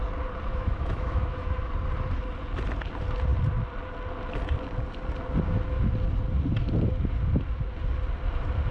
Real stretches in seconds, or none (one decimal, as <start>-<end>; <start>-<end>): 0.0-0.5; 1.6-8.7